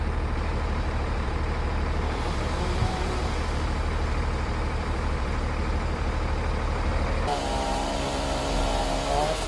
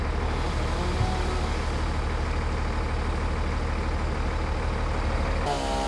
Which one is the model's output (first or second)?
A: first